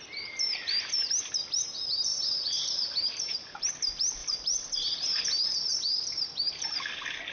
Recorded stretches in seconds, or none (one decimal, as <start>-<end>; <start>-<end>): 0.0-2.1; 3.7-4.2; 5.2-7.3